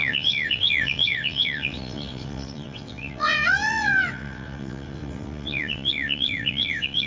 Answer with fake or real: fake